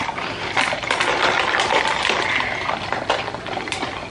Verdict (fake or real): fake